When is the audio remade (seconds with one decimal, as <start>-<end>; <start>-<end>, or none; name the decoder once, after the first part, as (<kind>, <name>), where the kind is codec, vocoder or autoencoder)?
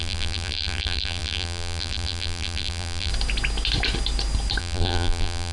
0.0-3.1 (vocoder, BigVGAN v2); 4.6-5.5